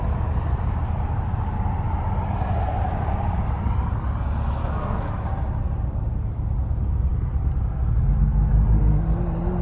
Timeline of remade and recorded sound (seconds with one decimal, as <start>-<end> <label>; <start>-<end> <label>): 0.0-4.6 recorded; 4.6-5.1 remade; 5.1-9.6 recorded